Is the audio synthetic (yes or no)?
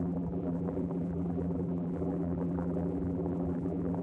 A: yes